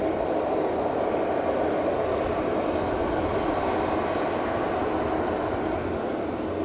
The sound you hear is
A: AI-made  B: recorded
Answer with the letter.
B